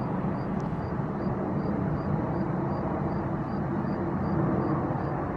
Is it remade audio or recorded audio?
recorded